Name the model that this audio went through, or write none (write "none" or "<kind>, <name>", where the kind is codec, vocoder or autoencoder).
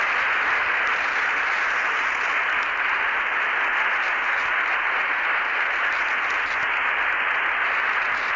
none